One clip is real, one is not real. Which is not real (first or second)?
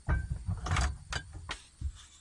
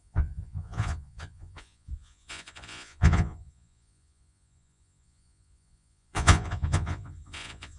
second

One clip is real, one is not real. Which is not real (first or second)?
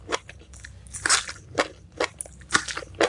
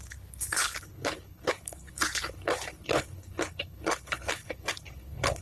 second